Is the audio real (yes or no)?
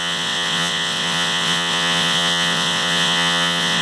no